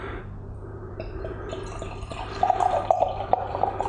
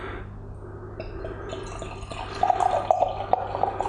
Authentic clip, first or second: second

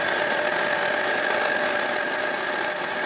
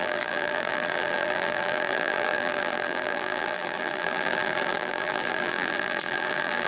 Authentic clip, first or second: first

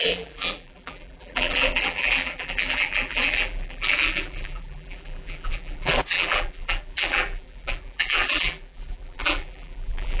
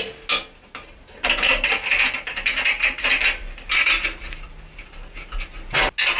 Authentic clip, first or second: second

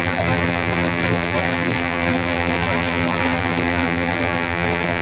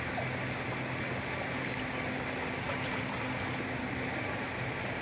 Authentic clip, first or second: second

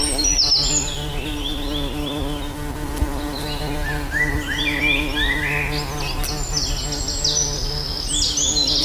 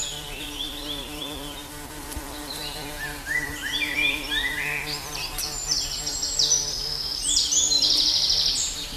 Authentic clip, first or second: first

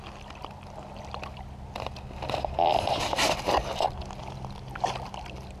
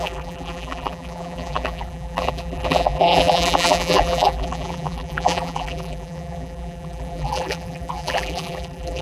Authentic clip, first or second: first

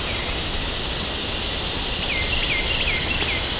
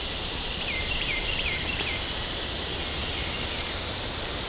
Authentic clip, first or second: first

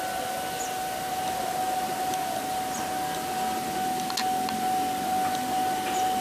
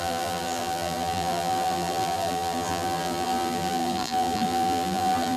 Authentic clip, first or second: first